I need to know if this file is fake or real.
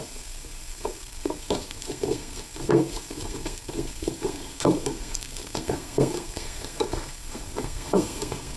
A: fake